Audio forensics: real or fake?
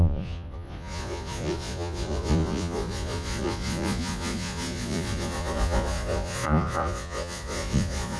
fake